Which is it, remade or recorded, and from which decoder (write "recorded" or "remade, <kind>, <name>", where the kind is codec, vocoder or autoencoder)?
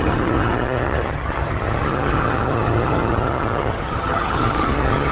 remade, vocoder, HiFi-GAN